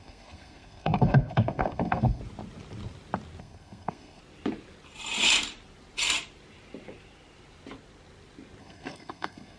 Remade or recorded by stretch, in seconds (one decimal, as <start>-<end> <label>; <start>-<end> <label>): 0.0-2.2 remade; 2.2-3.4 recorded; 3.4-4.2 remade; 4.2-8.6 recorded; 8.6-9.6 remade